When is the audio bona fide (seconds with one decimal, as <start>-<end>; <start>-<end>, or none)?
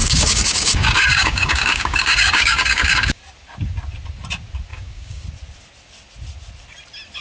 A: 3.2-4.7; 5.2-7.2